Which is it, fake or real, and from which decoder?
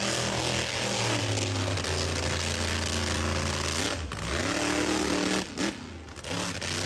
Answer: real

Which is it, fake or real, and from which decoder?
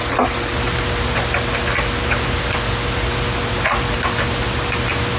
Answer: real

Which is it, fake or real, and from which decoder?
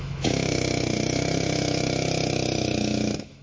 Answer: fake, autoencoder, DAC-VAE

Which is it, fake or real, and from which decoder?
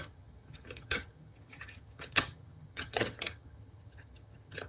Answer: fake, vocoder, HiFi-GAN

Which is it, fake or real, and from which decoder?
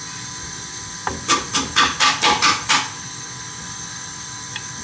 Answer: real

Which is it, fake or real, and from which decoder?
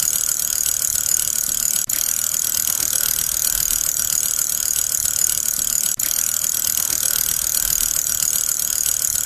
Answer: real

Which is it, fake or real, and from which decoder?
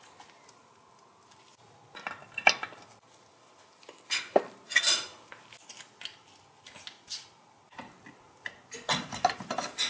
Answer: real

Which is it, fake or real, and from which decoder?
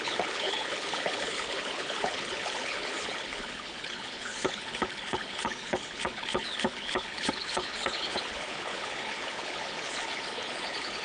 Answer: fake, codec, HILCodec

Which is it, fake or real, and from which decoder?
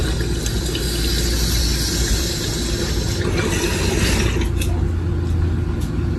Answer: real